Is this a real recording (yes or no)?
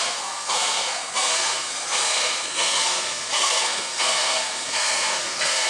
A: no